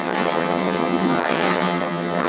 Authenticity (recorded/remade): remade